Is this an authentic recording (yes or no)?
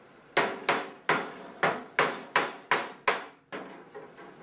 yes